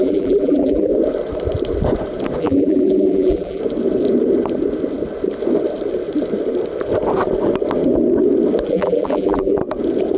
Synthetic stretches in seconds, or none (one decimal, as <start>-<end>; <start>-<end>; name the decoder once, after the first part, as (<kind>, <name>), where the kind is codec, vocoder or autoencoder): 0.0-0.9 (vocoder, BigVGAN v2); 2.4-3.6; 8.7-9.6